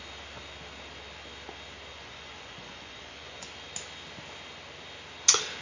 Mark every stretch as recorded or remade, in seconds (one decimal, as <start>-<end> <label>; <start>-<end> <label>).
0.0-1.9 recorded; 1.9-3.5 remade; 3.5-5.6 recorded